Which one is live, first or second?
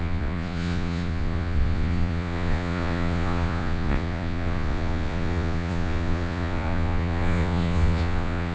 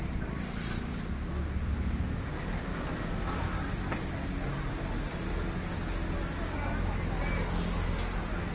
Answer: second